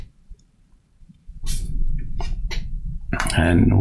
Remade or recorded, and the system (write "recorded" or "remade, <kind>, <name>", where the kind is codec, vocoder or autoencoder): remade, vocoder, BigVGAN v2